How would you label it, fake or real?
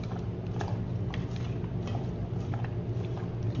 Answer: real